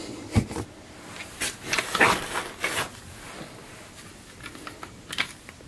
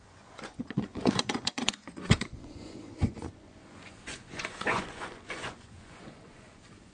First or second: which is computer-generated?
second